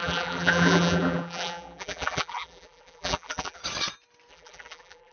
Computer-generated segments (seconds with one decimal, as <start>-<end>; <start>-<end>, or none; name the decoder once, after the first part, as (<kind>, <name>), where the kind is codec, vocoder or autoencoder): 0.0-3.6 (vocoder, BigVGAN v2); 4.3-5.1